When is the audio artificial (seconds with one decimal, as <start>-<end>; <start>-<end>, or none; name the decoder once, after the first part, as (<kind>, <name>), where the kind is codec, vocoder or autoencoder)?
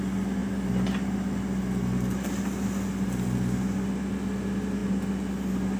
none